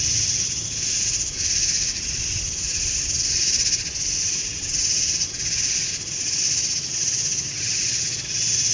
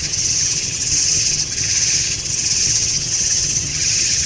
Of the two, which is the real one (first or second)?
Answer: first